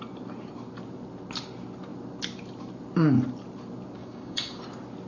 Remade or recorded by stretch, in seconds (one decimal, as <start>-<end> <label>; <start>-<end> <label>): 0.0-4.0 recorded; 4.0-4.6 remade; 4.6-5.1 recorded